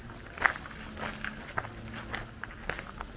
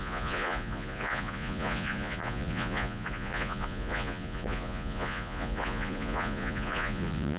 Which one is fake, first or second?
second